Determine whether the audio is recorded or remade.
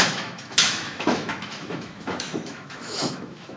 remade